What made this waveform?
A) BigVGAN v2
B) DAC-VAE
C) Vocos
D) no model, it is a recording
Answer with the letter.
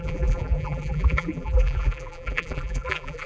A